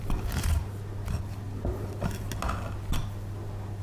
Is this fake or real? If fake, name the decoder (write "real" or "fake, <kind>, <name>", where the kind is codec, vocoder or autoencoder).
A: real